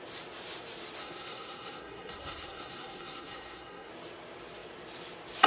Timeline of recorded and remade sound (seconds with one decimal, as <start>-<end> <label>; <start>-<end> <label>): 0.0-1.0 recorded; 1.0-3.9 remade; 3.9-5.5 recorded